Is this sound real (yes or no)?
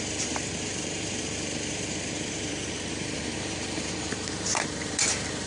no